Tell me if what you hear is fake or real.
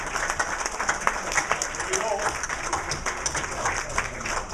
real